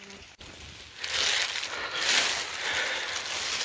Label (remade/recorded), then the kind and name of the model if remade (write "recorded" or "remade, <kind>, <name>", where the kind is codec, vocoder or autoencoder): recorded